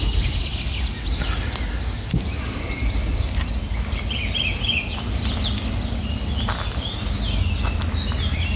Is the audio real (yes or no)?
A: yes